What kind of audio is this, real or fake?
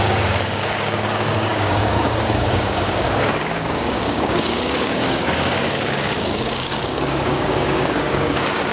fake